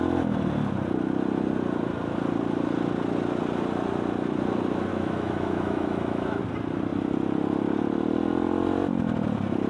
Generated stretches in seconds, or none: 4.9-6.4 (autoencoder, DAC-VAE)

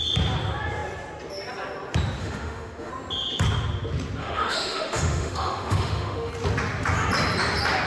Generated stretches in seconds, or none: 2.2-2.9 (autoencoder, DAC-VAE); 4.2-6.3